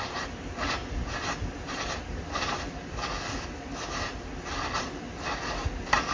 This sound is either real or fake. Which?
real